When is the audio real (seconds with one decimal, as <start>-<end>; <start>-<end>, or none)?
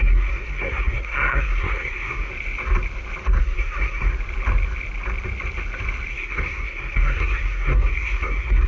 2.3-3.4; 4.1-6.1